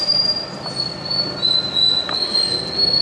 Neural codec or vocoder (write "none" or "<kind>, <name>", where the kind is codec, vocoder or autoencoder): none